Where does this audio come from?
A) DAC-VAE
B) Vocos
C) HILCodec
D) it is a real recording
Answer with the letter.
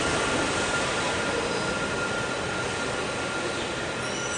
D